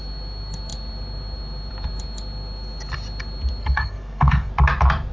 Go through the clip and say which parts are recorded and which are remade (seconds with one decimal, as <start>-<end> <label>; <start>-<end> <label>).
0.0-3.6 recorded; 3.6-4.5 remade; 4.5-5.1 recorded